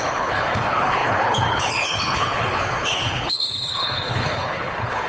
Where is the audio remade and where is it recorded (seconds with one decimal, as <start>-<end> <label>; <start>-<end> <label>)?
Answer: 0.0-5.1 remade